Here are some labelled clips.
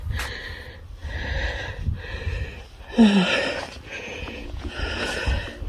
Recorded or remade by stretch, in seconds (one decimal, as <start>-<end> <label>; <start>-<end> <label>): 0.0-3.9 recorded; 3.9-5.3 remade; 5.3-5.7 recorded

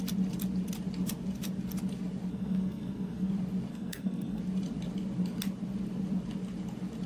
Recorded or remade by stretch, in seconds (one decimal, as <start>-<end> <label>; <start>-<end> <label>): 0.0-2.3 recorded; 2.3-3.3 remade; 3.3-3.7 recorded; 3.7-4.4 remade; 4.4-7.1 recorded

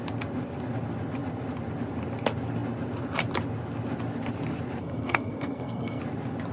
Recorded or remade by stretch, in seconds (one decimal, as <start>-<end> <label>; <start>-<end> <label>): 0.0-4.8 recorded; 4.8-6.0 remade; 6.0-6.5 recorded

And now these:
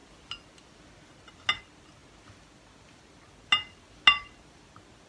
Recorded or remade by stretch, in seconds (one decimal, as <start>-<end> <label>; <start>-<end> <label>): 0.0-5.1 recorded

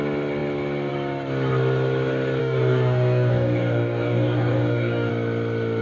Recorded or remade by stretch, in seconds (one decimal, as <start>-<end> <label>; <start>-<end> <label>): 0.0-2.4 recorded; 2.4-5.1 remade; 5.1-5.8 recorded

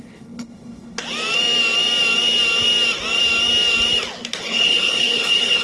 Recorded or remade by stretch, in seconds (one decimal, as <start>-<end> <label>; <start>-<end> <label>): 0.0-1.0 remade; 1.0-4.4 recorded; 4.4-5.6 remade